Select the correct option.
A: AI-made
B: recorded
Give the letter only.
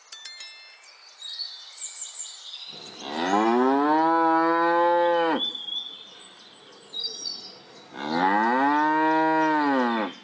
B